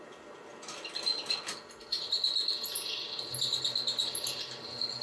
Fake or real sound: real